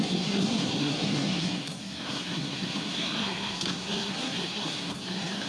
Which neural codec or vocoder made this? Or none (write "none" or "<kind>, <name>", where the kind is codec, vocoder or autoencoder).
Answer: codec, SNAC